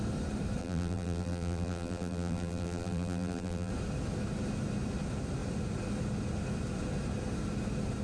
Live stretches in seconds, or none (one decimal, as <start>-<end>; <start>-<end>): 0.0-0.6; 3.7-8.0